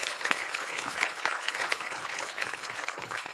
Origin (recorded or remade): remade